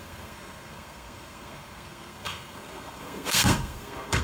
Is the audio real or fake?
fake